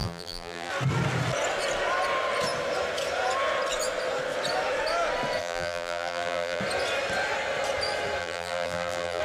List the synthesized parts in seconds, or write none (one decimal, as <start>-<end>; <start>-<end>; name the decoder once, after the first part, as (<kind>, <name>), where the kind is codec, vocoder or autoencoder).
0.0-0.7 (vocoder, BigVGAN v2); 5.4-6.6; 8.2-9.2